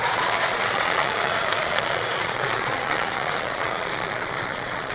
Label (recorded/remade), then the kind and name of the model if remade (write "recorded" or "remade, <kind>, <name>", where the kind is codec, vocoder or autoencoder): remade, vocoder, Vocos